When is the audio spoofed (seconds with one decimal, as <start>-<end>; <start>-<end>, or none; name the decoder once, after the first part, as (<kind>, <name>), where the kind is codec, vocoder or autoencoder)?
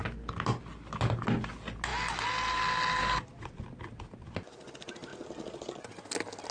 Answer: none